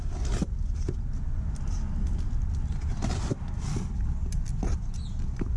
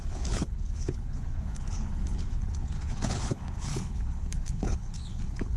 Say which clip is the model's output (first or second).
second